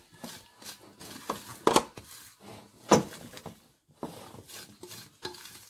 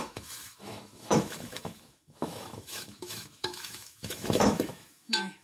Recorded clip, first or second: first